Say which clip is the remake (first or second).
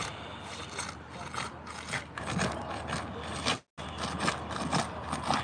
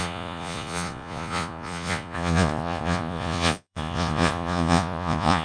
second